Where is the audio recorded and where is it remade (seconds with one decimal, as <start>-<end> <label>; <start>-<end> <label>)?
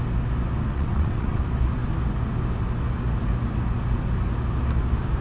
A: 0.0-0.7 recorded; 0.7-1.4 remade; 1.4-5.2 recorded